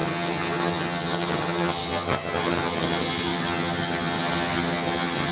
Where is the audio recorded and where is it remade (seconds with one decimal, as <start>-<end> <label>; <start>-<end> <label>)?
0.0-5.3 remade